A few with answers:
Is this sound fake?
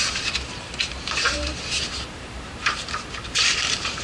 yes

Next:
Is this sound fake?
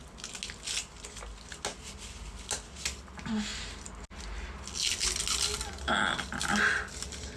no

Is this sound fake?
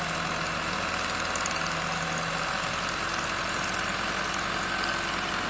no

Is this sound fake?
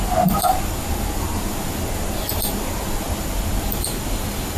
no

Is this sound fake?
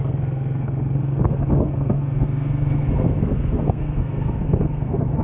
yes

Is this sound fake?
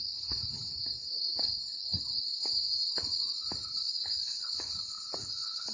yes